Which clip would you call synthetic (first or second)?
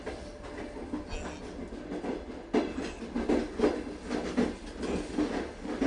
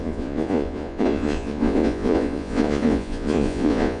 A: second